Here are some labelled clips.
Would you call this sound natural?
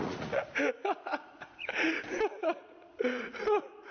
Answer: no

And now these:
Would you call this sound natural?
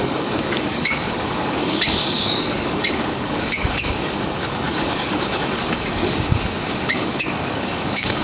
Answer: no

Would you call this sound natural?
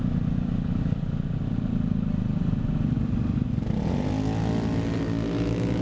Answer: yes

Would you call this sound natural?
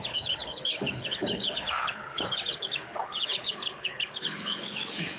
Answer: no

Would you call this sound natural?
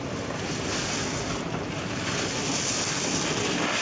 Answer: yes